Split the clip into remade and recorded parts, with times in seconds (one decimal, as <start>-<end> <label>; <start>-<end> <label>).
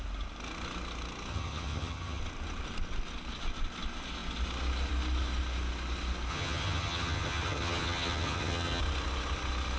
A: 0.0-1.3 recorded; 1.3-2.2 remade; 2.2-6.3 recorded; 6.3-8.8 remade; 8.8-9.8 recorded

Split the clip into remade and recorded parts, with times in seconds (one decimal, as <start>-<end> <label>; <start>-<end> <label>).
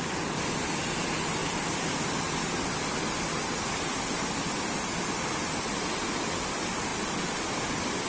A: 0.0-1.4 recorded; 1.4-2.6 remade; 2.6-6.9 recorded; 6.9-8.1 remade